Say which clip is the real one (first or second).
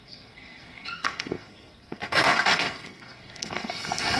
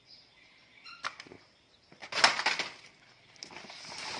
second